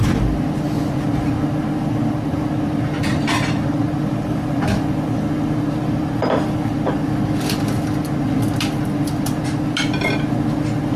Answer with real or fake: real